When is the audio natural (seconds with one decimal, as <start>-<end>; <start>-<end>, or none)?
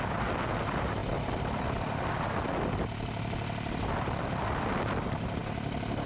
0.0-1.0; 4.7-6.1